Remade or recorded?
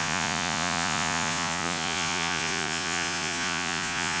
remade